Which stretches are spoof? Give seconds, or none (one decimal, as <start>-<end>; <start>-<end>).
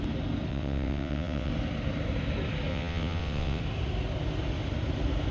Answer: 0.5-1.5; 2.7-3.6